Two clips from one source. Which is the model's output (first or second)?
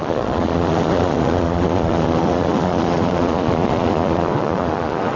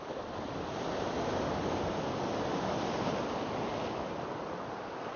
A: first